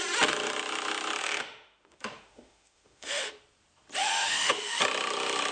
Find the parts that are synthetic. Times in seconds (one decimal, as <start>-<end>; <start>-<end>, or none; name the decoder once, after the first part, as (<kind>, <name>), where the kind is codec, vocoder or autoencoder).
1.2-3.3 (autoencoder, DAC-VAE); 4.0-4.8